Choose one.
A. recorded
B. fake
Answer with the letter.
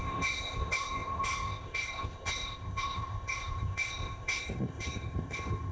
B